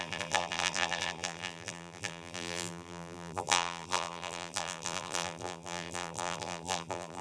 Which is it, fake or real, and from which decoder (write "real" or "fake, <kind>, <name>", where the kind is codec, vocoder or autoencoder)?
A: fake, vocoder, BigVGAN v2